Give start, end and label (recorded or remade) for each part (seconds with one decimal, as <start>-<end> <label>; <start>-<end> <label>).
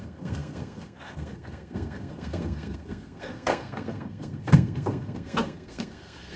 0.0-6.4 remade